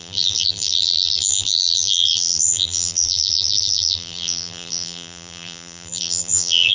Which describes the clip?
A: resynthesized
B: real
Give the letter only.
A